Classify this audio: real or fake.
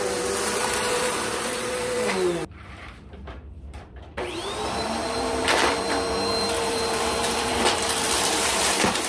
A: fake